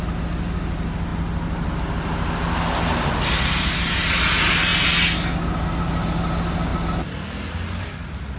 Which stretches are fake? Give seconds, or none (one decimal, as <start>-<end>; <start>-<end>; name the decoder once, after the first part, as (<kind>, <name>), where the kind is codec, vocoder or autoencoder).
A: none